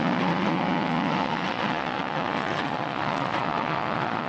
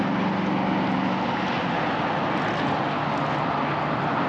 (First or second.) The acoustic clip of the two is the second